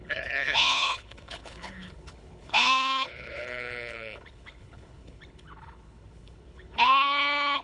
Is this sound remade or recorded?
remade